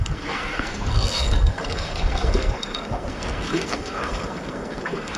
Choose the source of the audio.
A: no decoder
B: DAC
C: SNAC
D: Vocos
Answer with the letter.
C